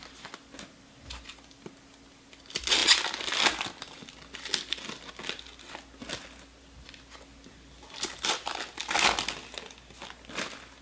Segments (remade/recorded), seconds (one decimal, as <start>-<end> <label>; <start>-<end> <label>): 0.0-10.8 recorded

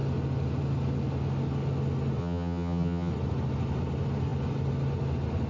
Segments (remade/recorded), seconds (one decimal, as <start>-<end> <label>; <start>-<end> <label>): 0.0-2.2 recorded; 2.2-3.1 remade; 3.1-5.5 recorded

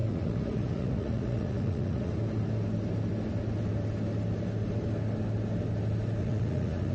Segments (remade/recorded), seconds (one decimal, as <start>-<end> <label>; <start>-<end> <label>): 0.0-2.1 remade; 2.1-6.2 recorded; 6.2-6.9 remade

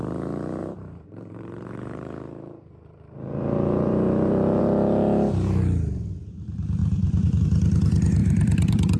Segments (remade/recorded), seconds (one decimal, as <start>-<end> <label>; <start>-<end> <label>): 0.0-0.6 recorded; 0.6-4.6 remade; 4.6-6.8 recorded; 6.8-7.4 remade; 7.4-8.2 recorded; 8.2-9.0 remade

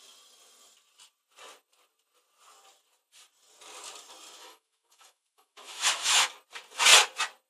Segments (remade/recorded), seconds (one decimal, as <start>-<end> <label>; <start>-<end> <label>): 0.0-4.4 recorded; 4.4-6.3 remade; 6.3-7.5 recorded

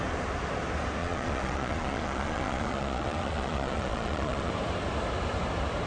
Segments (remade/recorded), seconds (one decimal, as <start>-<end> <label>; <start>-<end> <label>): 0.0-1.0 recorded; 1.0-4.5 remade; 4.5-5.9 recorded

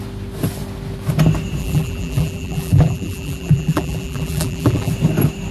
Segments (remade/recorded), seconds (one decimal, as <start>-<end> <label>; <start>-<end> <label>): 0.0-1.6 recorded; 1.6-4.9 remade; 4.9-5.5 recorded

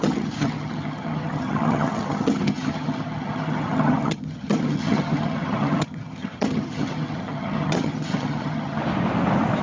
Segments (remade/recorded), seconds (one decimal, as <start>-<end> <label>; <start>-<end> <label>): 0.0-8.8 remade; 8.8-9.6 recorded